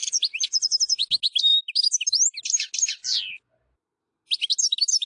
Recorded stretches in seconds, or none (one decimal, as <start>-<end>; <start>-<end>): 0.8-5.0